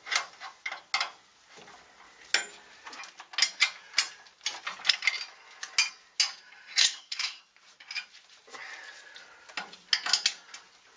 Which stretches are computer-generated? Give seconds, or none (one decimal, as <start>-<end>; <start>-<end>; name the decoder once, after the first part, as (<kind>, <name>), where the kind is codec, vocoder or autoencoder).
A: 6.8-7.4 (codec, SNAC)